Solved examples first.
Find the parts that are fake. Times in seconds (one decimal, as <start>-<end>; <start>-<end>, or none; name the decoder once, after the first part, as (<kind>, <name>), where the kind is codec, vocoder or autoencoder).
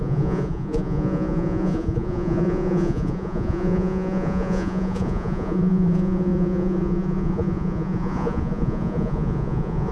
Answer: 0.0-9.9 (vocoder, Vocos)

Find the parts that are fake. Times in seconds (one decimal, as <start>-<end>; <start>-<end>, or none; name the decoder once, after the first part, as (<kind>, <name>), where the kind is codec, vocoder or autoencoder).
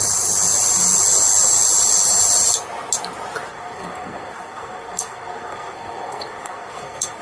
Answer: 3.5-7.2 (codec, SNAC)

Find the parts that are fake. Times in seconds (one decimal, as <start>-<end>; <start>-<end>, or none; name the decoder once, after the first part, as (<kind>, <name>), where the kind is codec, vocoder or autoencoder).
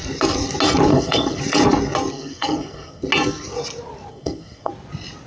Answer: 0.9-1.4 (codec, SNAC); 2.1-3.1; 4.1-4.7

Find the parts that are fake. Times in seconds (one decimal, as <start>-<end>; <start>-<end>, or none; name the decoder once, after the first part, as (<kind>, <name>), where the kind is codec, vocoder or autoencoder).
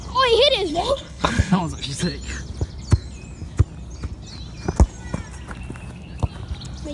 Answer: 0.7-1.6 (codec, HILCodec)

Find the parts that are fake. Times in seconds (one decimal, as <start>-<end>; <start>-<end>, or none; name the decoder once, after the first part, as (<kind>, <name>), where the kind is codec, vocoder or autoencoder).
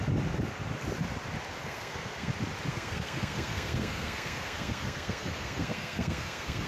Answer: 1.6-2.3 (codec, SNAC); 2.7-6.7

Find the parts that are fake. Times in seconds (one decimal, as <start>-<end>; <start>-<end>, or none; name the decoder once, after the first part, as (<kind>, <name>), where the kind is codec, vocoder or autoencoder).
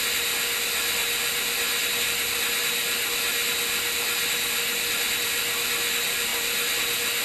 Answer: none